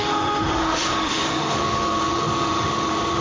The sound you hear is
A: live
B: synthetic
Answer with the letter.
B